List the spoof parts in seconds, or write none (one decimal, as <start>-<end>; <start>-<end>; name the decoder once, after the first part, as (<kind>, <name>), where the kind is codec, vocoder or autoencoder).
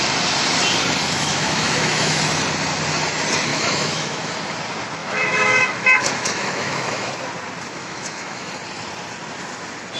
1.0-2.2 (autoencoder, DAC-VAE); 3.5-4.3; 5.0-7.1; 7.8-8.5